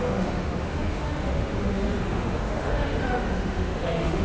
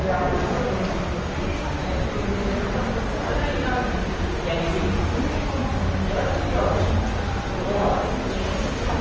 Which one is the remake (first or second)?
first